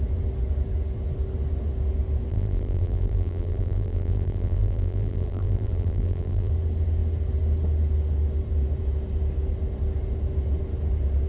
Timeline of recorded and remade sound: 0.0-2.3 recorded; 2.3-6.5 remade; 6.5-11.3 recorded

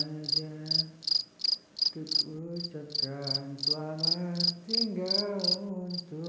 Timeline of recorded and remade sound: 0.0-6.3 recorded

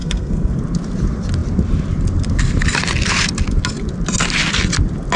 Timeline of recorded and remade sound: 0.0-0.5 remade; 0.5-5.2 recorded

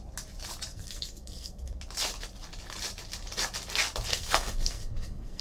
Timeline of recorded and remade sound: 0.0-0.7 recorded; 0.7-1.8 remade; 1.8-4.1 recorded; 4.1-5.4 remade